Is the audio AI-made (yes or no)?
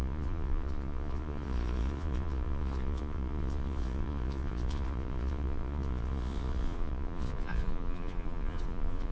yes